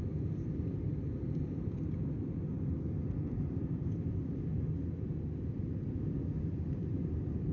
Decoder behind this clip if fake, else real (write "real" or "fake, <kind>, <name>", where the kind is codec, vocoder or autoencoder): real